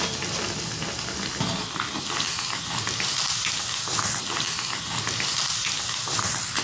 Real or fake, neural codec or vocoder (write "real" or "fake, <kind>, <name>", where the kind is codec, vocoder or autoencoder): real